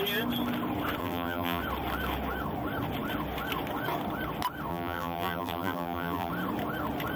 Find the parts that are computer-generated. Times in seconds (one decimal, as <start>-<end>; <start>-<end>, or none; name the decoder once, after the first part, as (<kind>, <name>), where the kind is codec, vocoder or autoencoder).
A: 1.0-1.6 (vocoder, BigVGAN v2); 4.7-6.3